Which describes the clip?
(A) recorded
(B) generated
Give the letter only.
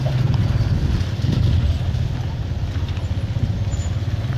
A